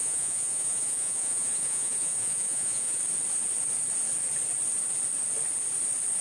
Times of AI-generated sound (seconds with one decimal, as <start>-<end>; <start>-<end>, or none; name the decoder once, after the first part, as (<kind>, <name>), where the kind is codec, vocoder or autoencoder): 0.0-3.0 (vocoder, Vocos)